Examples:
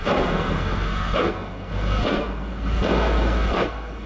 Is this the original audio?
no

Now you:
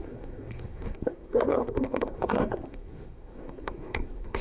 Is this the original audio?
no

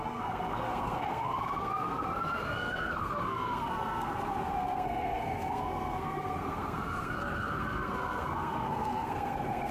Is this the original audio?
no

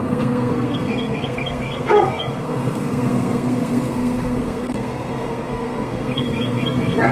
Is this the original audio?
no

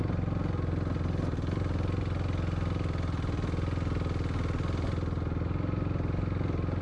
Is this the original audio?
yes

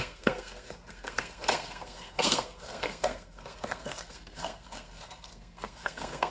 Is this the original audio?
no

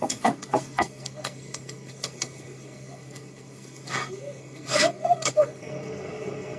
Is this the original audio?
no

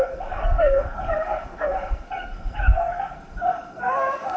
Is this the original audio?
no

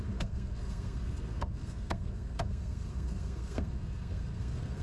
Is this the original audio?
no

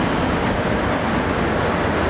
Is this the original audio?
yes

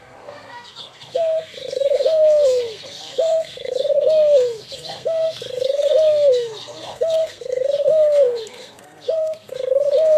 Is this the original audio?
no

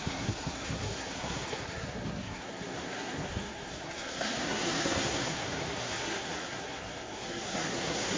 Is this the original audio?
no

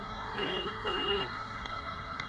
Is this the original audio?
no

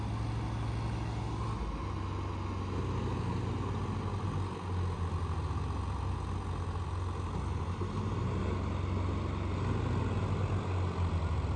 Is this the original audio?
yes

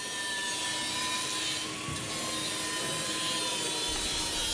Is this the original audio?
yes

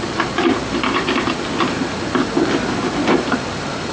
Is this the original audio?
yes